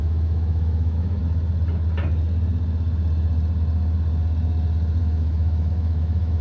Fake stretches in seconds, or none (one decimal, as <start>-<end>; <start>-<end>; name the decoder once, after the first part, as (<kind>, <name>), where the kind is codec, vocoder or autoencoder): 0.0-1.2 (autoencoder, DAC-VAE); 5.0-6.4